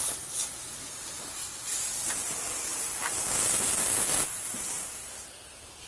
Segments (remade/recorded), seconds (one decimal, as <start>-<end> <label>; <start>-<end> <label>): 0.0-4.1 recorded; 4.1-5.2 remade; 5.2-5.9 recorded

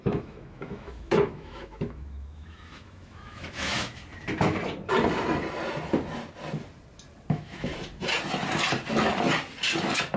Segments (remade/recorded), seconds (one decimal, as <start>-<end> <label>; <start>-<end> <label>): 0.0-4.0 remade; 4.0-7.3 recorded; 7.3-7.7 remade; 7.7-10.2 recorded

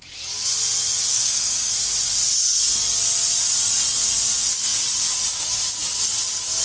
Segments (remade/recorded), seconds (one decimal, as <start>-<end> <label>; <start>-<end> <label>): 0.0-1.1 recorded; 1.1-1.7 remade; 1.7-6.6 recorded

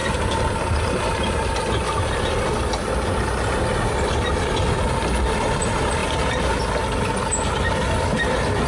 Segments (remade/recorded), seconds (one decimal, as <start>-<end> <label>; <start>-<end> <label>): 0.0-1.6 remade; 1.6-8.7 recorded

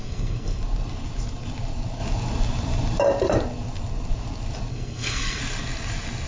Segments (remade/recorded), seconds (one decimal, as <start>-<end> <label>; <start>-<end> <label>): 0.0-0.6 remade; 0.6-4.7 recorded; 4.7-5.4 remade; 5.4-6.3 recorded

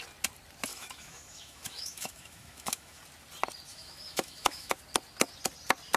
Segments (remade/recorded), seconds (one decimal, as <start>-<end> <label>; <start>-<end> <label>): 0.0-0.7 recorded; 0.7-3.0 remade; 3.0-3.7 recorded; 3.7-4.7 remade; 4.7-6.0 recorded